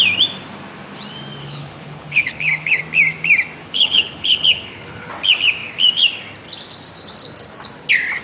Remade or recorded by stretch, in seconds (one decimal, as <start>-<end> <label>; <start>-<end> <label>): 0.0-1.4 recorded; 1.4-2.8 remade; 2.8-3.6 recorded; 3.6-5.1 remade; 5.1-8.2 recorded